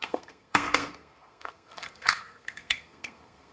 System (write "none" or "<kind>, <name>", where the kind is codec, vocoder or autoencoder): codec, SNAC